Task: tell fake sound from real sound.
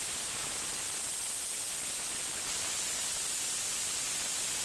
real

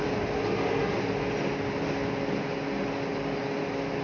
real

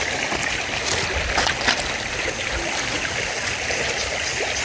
real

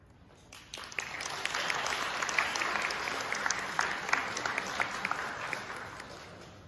real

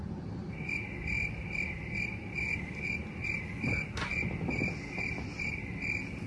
real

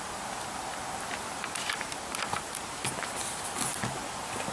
real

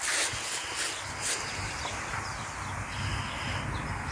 real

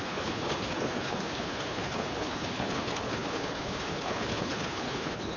fake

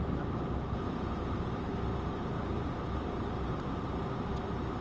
real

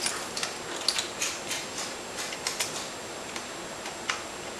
real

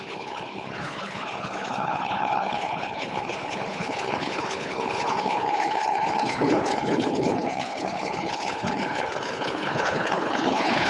fake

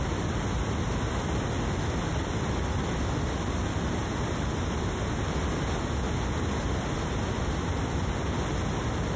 real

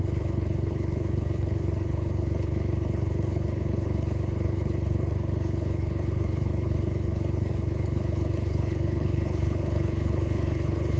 fake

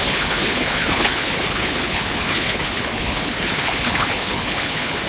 fake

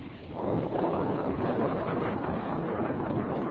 fake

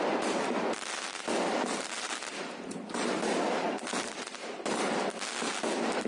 real